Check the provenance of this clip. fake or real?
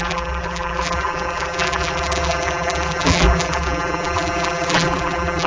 fake